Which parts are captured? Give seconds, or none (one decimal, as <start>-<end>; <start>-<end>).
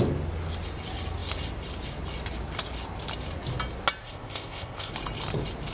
0.0-4.0; 4.9-5.7